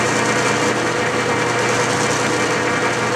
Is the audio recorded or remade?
recorded